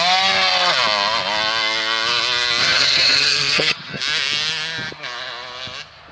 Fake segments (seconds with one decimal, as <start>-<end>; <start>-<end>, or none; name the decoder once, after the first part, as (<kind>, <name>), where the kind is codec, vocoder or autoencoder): 2.6-4.0 (vocoder, HiFi-GAN)